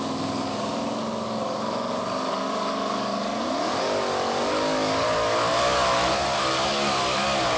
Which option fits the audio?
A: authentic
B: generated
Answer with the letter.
B